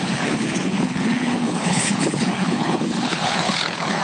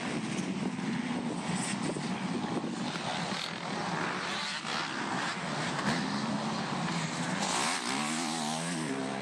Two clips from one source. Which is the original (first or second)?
second